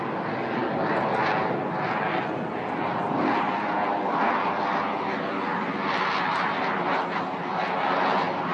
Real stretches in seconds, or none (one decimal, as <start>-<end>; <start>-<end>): 0.0-8.5